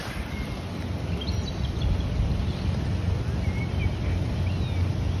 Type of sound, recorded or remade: recorded